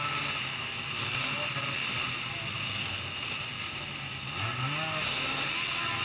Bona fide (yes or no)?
yes